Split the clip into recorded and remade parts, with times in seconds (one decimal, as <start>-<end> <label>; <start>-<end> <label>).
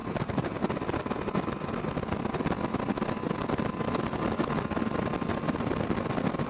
0.0-0.6 remade; 0.6-6.5 recorded